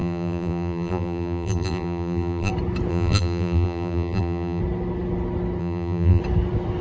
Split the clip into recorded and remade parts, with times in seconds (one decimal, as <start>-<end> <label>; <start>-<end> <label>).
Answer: 0.0-2.5 remade; 2.5-2.9 recorded; 2.9-4.6 remade; 4.6-5.6 recorded; 5.6-6.2 remade; 6.2-6.8 recorded